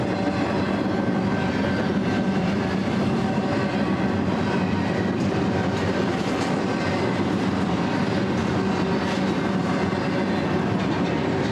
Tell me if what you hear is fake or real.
real